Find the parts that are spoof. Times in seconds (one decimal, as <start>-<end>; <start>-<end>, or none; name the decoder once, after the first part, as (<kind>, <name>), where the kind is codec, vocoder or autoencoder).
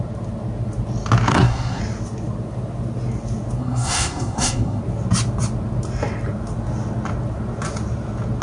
1.3-1.8 (codec, SNAC); 3.6-4.8